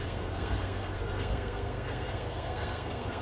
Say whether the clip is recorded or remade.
remade